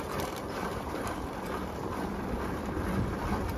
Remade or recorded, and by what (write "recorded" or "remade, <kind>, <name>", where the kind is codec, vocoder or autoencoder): recorded